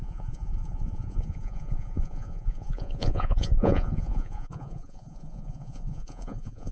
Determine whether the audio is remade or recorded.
remade